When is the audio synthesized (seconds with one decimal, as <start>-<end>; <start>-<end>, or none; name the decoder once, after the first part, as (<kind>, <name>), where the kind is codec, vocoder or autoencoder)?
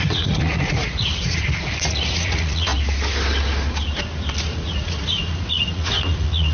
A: 0.0-2.7 (vocoder, Vocos); 4.4-6.5